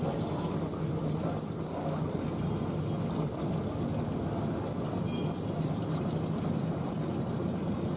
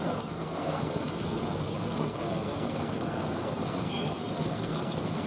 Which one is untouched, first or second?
first